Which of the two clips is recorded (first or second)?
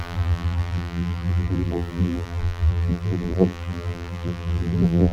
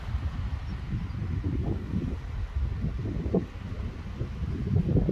second